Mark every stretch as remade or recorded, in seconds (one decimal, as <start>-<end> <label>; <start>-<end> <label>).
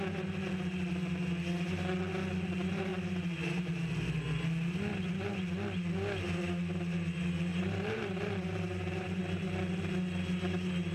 0.0-2.9 recorded; 2.9-3.7 remade; 3.7-7.5 recorded; 7.5-9.2 remade; 9.2-10.9 recorded